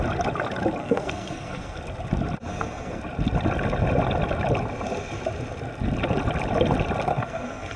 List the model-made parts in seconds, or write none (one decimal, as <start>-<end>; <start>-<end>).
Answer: 0.8-1.8; 2.5-3.0; 7.1-7.8